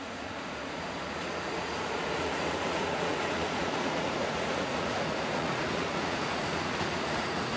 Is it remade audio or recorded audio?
remade